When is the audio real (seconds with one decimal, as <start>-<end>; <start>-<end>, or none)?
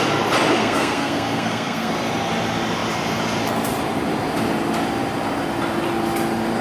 0.0-0.6; 1.9-6.6